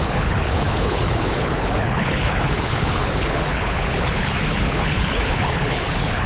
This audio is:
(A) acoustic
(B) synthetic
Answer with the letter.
B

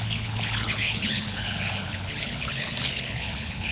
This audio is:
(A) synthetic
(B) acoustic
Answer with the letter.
A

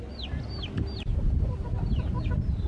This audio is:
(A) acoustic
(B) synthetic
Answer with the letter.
A